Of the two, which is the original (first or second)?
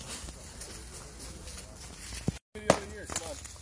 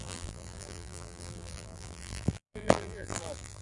first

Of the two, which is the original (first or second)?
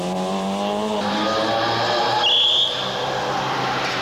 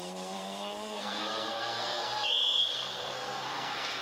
first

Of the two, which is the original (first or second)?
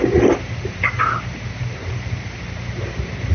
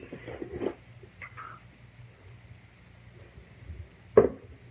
second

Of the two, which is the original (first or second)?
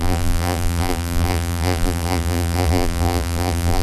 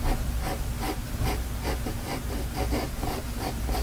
second